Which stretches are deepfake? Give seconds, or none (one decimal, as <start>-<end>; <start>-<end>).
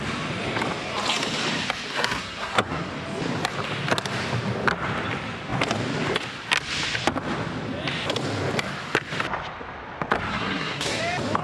1.9-2.9; 10.3-11.0